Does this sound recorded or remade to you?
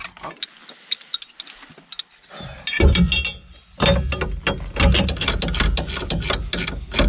recorded